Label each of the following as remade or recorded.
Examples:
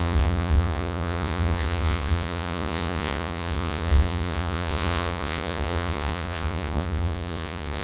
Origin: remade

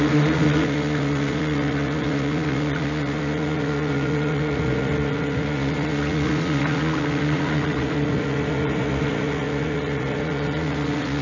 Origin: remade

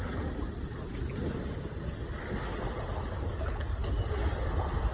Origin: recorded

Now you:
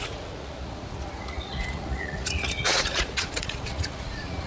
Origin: remade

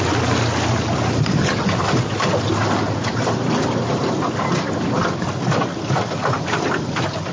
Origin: recorded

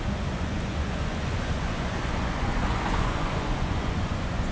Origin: remade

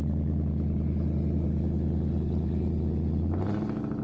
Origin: recorded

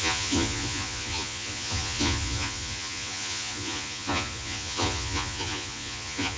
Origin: remade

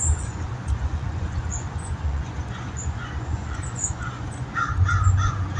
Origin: remade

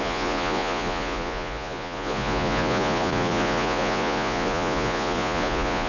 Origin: remade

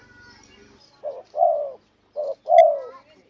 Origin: recorded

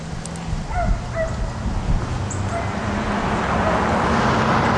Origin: recorded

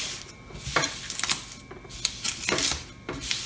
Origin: recorded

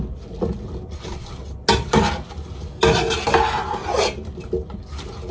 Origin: recorded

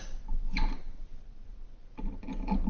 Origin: recorded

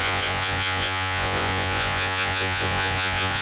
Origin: remade